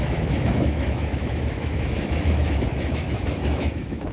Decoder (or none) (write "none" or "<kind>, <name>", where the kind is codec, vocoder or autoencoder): autoencoder, DAC-VAE